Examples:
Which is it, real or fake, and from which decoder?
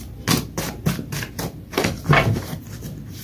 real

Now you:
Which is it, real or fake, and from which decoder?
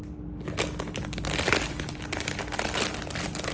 real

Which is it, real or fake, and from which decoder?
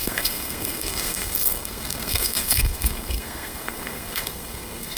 fake, codec, SNAC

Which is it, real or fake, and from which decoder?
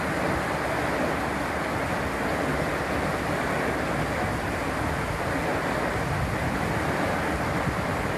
real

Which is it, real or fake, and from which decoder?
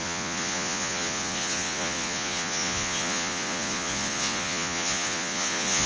fake, vocoder, Vocos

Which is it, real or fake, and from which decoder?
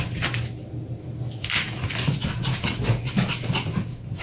real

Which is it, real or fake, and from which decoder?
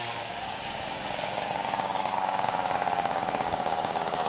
fake, codec, DAC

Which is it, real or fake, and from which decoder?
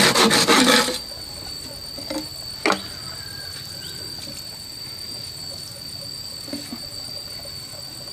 real